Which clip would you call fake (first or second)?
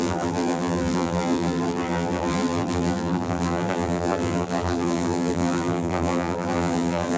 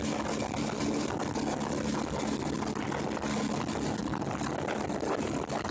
first